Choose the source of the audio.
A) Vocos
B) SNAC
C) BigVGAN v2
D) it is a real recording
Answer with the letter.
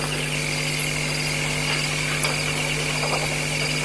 D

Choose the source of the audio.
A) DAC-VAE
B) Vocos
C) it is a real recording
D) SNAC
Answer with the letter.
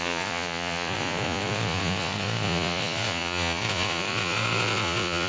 B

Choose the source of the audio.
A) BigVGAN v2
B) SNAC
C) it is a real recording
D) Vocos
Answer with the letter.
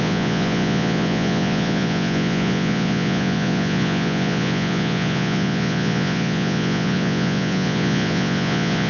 D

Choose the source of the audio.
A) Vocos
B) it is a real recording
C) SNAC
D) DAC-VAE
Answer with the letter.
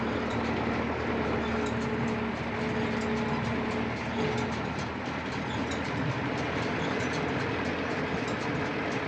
B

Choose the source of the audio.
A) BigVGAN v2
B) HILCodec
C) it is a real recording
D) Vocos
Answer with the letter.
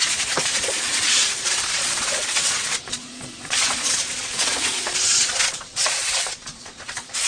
D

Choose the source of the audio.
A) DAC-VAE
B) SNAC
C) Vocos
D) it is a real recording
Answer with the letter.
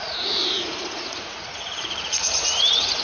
C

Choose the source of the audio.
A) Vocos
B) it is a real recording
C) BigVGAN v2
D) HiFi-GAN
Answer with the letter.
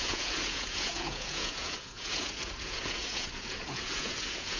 A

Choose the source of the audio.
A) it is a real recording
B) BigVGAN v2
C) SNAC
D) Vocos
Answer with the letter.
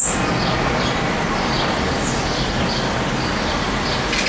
A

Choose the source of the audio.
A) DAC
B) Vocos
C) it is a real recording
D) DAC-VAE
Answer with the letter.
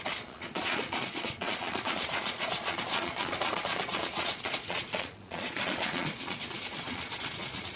B